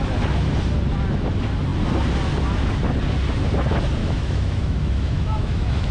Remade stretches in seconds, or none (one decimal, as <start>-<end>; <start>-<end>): 4.0-5.9